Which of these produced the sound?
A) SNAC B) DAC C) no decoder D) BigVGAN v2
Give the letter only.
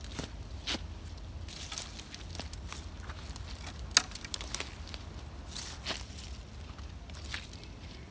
C